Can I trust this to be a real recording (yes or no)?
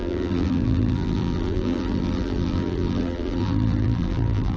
no